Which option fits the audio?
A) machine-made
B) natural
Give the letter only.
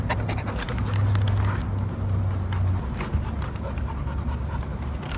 B